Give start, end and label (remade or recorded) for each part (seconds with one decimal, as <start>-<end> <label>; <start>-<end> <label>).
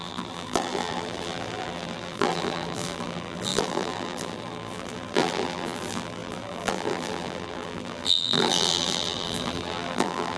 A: 0.0-10.4 remade